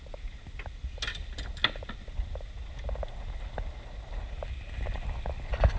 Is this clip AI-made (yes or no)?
no